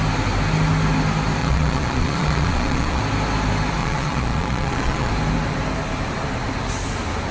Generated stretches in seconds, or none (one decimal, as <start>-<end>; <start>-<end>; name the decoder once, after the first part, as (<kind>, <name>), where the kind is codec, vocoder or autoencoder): 1.4-3.0 (vocoder, Vocos); 3.8-5.1